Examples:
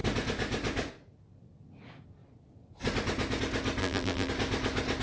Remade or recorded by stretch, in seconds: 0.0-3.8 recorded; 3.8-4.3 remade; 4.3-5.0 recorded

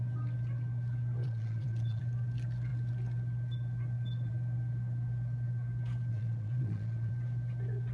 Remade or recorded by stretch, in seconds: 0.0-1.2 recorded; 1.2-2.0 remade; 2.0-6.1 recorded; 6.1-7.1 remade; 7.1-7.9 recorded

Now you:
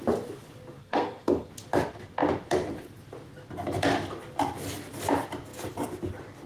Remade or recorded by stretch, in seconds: 0.0-0.8 recorded; 0.8-1.5 remade; 1.5-6.5 recorded